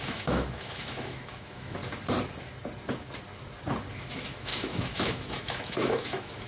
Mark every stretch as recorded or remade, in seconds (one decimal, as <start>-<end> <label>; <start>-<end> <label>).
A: 0.0-1.8 remade; 1.8-3.9 recorded; 3.9-6.5 remade